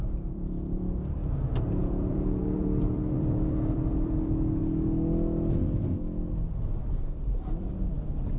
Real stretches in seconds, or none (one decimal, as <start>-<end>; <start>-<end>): 1.2-1.8; 4.6-6.8